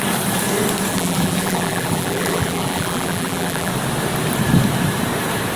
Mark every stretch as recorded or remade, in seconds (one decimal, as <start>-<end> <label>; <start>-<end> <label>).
0.0-0.9 recorded; 0.9-3.7 remade; 3.7-5.6 recorded